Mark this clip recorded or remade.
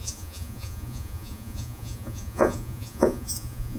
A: remade